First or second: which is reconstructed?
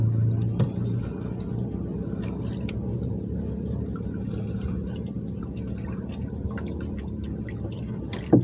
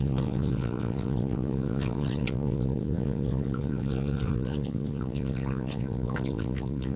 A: second